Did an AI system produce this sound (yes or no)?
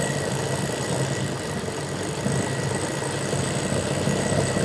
no